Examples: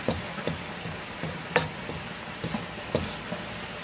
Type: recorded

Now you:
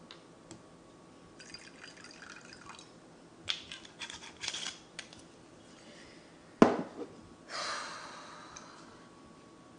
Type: recorded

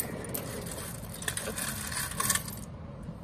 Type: recorded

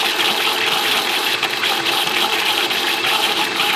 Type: remade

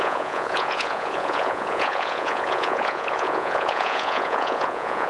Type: remade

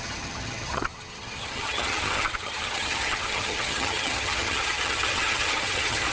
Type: remade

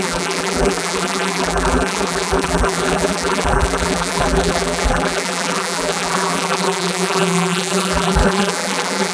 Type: remade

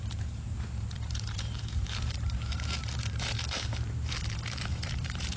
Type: remade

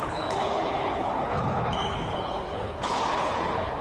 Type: remade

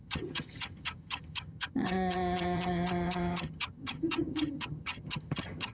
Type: remade